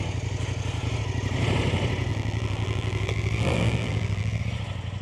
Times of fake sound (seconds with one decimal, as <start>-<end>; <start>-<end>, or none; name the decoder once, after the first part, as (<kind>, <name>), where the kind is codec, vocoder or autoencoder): 2.1-4.4 (vocoder, BigVGAN v2)